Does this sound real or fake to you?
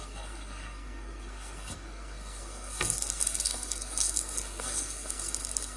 fake